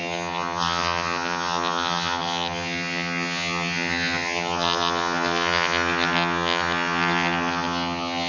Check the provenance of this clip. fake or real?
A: fake